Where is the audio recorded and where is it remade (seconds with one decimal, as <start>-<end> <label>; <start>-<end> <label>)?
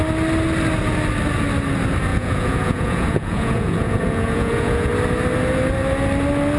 0.0-2.1 recorded; 2.1-4.9 remade; 4.9-6.6 recorded